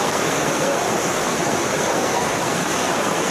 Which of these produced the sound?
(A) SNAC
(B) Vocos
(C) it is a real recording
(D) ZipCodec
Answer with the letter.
A